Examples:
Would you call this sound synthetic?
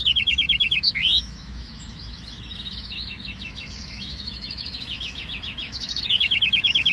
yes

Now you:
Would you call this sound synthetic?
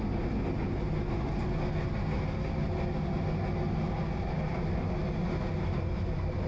no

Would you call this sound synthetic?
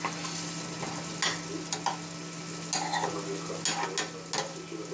no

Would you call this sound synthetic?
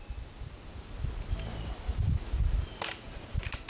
no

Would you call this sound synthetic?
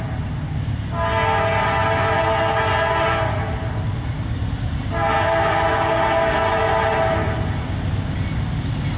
no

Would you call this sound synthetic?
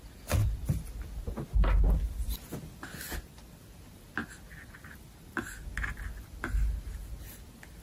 no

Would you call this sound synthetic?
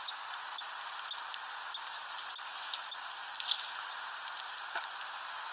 no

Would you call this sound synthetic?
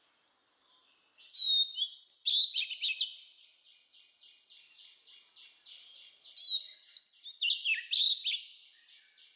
no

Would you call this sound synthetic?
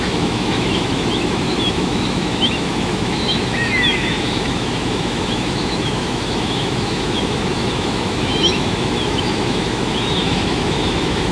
yes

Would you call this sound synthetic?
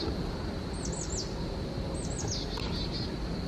no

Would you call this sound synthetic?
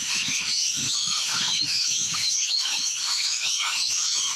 yes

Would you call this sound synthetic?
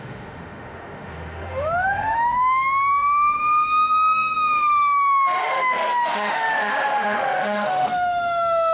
yes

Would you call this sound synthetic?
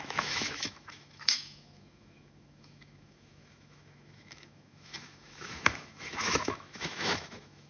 yes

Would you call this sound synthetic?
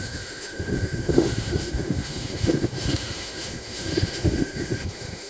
yes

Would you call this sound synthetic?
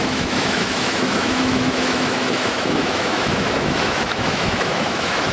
yes